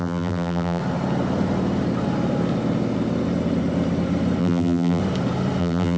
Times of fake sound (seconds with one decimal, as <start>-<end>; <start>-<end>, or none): 0.0-0.8; 4.4-5.0; 5.6-6.0